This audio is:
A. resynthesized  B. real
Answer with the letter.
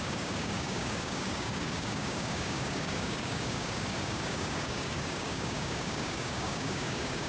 A